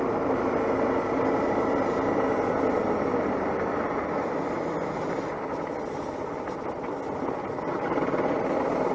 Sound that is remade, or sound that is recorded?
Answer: recorded